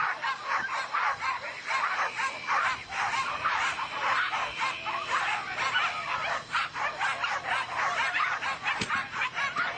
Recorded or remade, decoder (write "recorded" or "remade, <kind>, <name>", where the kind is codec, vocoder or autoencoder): recorded